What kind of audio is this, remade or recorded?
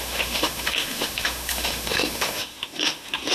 remade